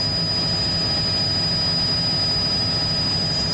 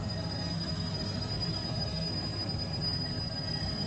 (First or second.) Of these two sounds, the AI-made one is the second